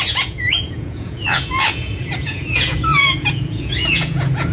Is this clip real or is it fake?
fake